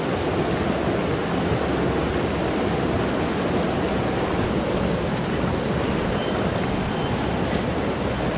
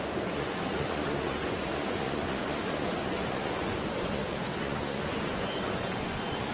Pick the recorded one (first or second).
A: first